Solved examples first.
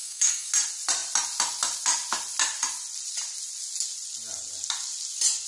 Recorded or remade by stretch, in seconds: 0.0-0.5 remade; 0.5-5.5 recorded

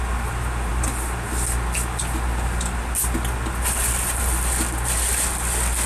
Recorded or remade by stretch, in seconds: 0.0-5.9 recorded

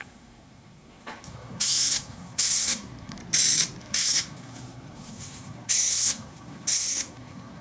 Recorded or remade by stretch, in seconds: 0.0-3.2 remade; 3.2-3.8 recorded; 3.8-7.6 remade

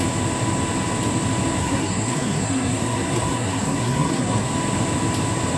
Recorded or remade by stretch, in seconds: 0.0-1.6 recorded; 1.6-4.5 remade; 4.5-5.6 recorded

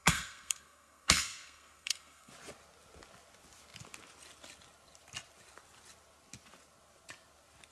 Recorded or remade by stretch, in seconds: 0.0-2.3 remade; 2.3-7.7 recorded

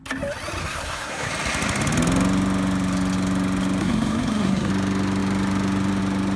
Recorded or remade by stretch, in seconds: 0.0-0.6 recorded; 0.6-1.3 remade; 1.3-3.8 recorded; 3.8-4.7 remade; 4.7-6.4 recorded

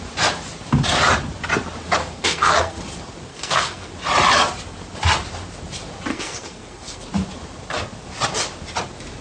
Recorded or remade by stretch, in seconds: 0.0-2.0 recorded; 2.0-2.8 remade; 2.8-3.3 recorded; 3.3-3.9 remade; 3.9-6.1 recorded; 6.1-7.1 remade; 7.1-9.2 recorded

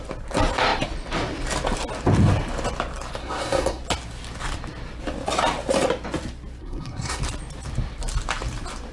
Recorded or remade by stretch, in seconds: 0.0-3.2 recorded; 3.2-3.8 remade; 3.8-6.6 recorded; 6.6-7.2 remade; 7.2-8.9 recorded